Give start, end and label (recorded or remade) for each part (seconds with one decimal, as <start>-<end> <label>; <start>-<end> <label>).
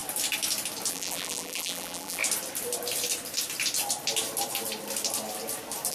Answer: 0.0-0.9 recorded; 0.9-2.2 remade; 2.2-5.9 recorded